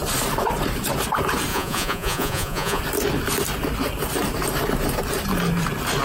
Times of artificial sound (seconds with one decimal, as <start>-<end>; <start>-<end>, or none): 1.5-2.8